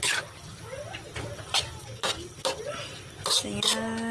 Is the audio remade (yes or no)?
no